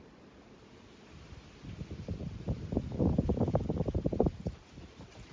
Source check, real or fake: real